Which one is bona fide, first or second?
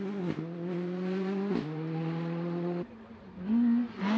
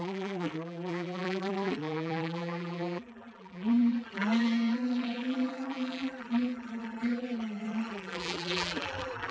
first